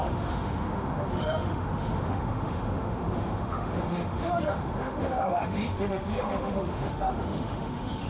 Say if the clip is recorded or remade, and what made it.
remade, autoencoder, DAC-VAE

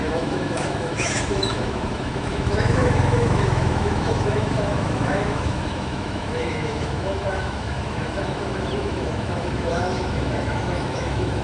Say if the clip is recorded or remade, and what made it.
remade, autoencoder, DAC-VAE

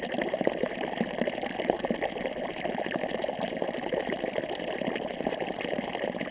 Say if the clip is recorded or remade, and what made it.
recorded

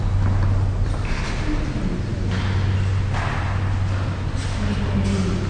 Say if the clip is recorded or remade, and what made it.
recorded